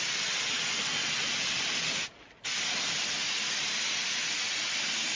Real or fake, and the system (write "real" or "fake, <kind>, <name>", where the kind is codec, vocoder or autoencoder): real